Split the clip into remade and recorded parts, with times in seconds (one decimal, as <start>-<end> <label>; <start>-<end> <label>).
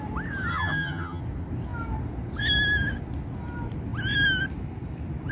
0.0-0.5 recorded; 0.5-1.2 remade; 1.2-5.3 recorded